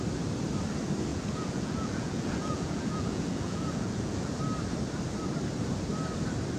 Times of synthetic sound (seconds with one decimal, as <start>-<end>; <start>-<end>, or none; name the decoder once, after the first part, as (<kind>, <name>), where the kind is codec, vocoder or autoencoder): 1.1-4.4 (vocoder, Vocos)